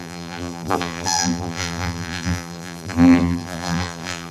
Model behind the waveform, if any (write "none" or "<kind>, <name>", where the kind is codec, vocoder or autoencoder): vocoder, BigVGAN v2